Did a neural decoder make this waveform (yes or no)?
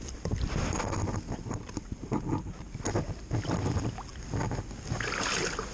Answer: no